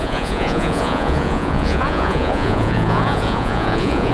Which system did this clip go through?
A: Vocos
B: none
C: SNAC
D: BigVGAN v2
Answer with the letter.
A